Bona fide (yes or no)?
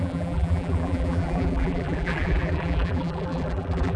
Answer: no